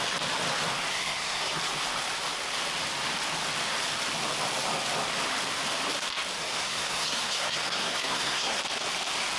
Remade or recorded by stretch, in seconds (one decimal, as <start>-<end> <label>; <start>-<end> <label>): 0.0-0.9 recorded; 0.9-1.6 remade; 1.6-6.4 recorded; 6.4-8.6 remade; 8.6-9.4 recorded